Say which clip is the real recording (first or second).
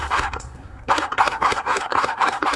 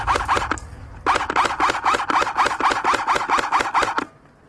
second